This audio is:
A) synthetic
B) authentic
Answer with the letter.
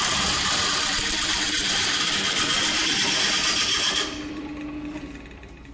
A